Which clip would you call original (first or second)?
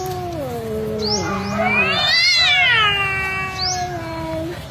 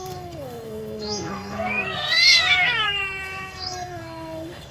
first